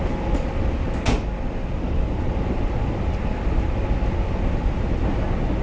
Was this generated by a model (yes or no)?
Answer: no